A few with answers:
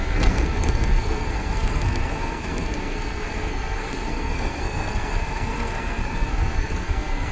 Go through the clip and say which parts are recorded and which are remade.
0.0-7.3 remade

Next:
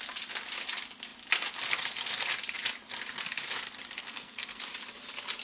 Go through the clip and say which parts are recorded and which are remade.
0.0-4.0 recorded; 4.0-4.6 remade; 4.6-5.4 recorded